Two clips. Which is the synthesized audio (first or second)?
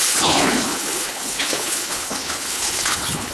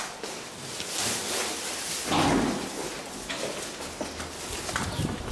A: first